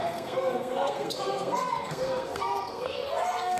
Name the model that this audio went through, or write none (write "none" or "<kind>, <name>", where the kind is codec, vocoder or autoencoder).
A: codec, SNAC